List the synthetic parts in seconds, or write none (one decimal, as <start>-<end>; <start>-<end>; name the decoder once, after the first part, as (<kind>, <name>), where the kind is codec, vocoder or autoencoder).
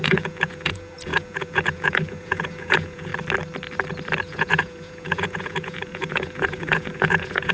0.0-3.1 (vocoder, Vocos); 4.2-7.5